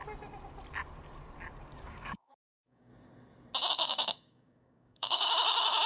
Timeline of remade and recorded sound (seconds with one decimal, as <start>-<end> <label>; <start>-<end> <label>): 0.0-1.8 recorded; 1.8-2.9 remade; 2.9-3.7 recorded; 3.7-5.9 remade